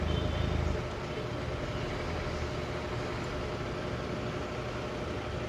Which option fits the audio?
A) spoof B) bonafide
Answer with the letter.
B